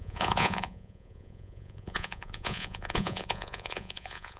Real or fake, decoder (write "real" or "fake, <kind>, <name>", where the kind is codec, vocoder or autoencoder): fake, vocoder, Vocos